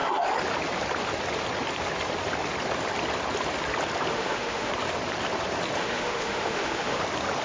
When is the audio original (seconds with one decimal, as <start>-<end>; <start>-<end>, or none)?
0.0-4.1; 4.7-5.8; 7.0-7.4